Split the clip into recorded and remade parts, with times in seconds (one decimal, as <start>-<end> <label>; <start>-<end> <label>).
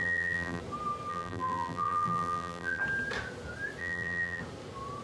0.0-0.6 remade; 0.6-1.1 recorded; 1.1-2.8 remade; 2.8-3.8 recorded; 3.8-4.4 remade; 4.4-5.0 recorded